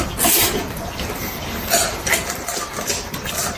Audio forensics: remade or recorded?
remade